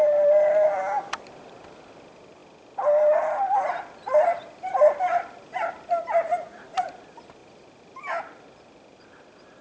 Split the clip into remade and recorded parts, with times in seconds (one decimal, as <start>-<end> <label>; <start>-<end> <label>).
0.0-9.6 recorded